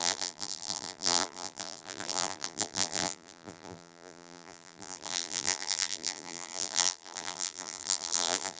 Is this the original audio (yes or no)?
no